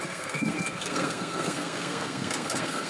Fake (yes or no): yes